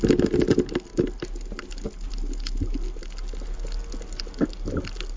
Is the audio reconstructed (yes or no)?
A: no